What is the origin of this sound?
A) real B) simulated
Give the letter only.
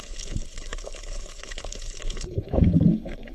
B